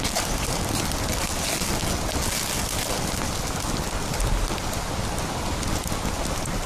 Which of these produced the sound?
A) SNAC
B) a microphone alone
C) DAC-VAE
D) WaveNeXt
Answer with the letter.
B